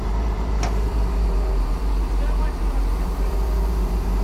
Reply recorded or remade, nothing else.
remade